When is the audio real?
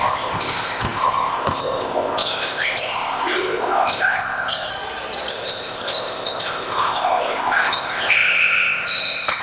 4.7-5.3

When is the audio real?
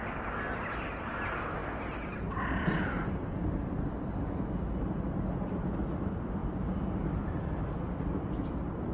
0.0-8.9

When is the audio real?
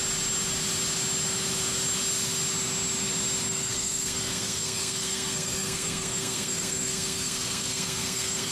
0.0-3.5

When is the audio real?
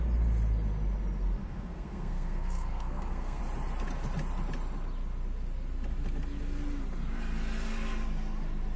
0.0-1.4; 3.4-8.8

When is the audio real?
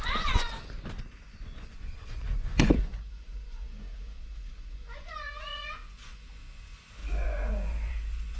0.5-1.2